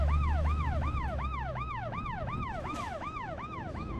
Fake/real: fake